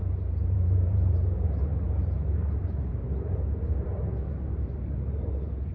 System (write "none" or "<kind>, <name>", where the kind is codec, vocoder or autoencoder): vocoder, BigVGAN v2